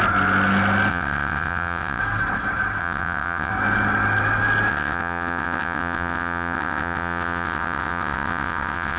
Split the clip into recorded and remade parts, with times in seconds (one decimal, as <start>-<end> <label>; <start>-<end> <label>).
0.0-0.9 recorded; 0.9-2.0 remade; 2.0-2.8 recorded; 2.8-3.5 remade; 3.5-4.7 recorded; 4.7-9.0 remade